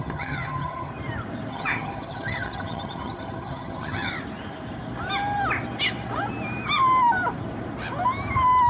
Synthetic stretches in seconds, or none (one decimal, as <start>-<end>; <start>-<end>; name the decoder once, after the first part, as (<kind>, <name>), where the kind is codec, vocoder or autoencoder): 0.0-0.9 (vocoder, HiFi-GAN); 1.5-4.1